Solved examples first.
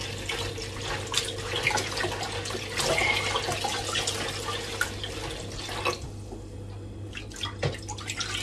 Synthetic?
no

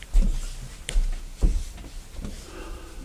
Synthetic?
no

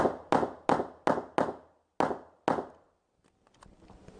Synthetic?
no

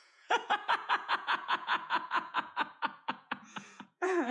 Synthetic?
yes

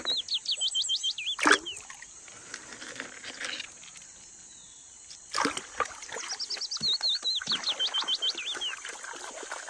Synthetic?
no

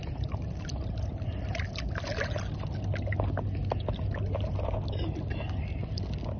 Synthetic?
no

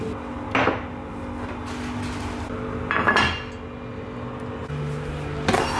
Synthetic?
no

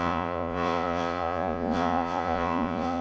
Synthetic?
yes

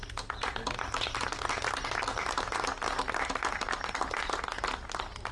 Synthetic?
no